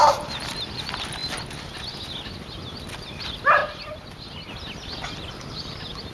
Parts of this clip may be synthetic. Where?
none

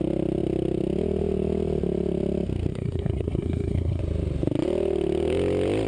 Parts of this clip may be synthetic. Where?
2.7-4.0 (codec, SNAC)

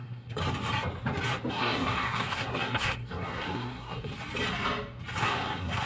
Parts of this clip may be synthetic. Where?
0.0-0.4 (codec, SNAC); 1.5-4.1; 5.2-5.9

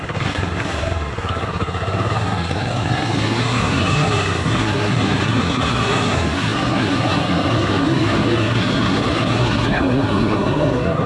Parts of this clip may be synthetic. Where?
0.0-11.1 (codec, SNAC)